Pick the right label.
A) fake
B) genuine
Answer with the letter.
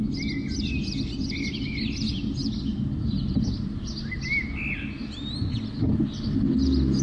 B